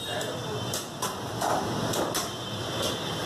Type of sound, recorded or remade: recorded